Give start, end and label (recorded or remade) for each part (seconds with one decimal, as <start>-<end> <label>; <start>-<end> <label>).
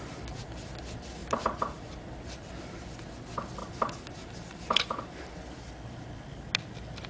0.0-1.2 recorded; 1.2-1.9 remade; 1.9-3.6 recorded; 3.6-5.2 remade; 5.2-7.1 recorded